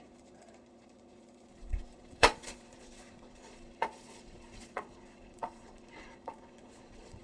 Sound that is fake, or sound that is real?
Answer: fake